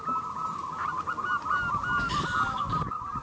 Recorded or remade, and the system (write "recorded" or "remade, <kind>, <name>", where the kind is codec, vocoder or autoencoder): recorded